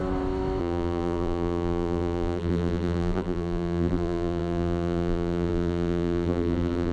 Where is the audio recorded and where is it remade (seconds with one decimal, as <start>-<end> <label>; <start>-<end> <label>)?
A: 0.0-0.6 recorded; 0.6-6.9 remade